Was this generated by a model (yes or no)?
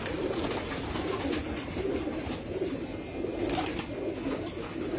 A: no